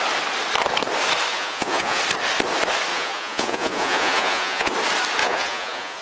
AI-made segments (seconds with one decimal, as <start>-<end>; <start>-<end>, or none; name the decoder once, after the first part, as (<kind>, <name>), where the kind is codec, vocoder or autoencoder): 1.3-2.0 (vocoder, Vocos); 2.9-4.7; 5.2-6.0